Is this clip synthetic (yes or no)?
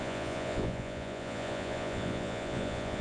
yes